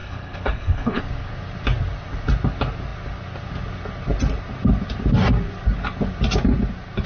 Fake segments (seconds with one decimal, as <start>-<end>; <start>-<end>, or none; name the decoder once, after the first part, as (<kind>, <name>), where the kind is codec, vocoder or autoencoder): 0.0-1.0 (codec, HILCodec)